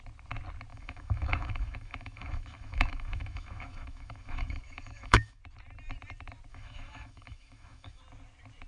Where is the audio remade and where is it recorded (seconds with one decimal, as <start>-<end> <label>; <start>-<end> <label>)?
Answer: 0.0-0.7 recorded; 0.7-5.4 remade; 5.4-6.5 recorded; 6.5-8.0 remade; 8.0-8.7 recorded